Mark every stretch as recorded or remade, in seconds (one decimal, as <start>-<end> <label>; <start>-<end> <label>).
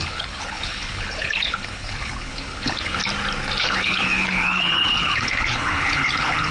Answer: 0.0-3.0 remade; 3.0-3.6 recorded; 3.6-6.5 remade